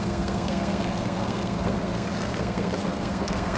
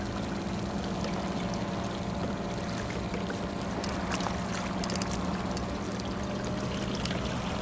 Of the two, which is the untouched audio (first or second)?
second